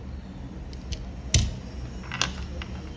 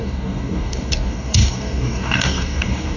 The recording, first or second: first